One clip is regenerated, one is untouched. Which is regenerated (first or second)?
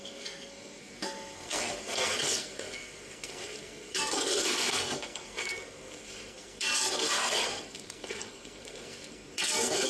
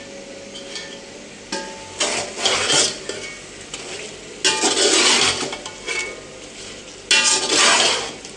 first